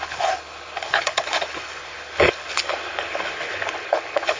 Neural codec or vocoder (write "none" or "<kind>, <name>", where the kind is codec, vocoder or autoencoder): codec, HILCodec